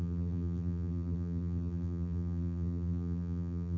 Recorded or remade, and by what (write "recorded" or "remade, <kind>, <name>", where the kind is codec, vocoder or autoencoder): remade, vocoder, BigVGAN v2